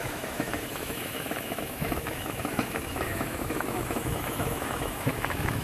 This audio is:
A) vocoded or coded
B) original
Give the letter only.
A